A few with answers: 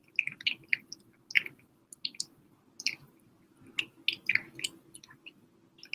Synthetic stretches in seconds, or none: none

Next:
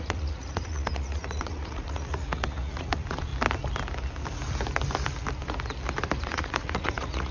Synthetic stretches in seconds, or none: 0.0-3.3 (vocoder, Vocos); 6.2-7.3